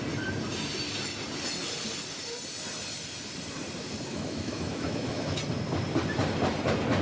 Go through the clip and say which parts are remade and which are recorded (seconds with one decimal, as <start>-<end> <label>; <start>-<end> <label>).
0.0-4.1 recorded; 4.1-5.4 remade; 5.4-7.0 recorded